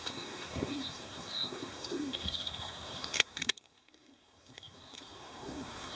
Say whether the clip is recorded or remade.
remade